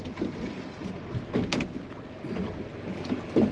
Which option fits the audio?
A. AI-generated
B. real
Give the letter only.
B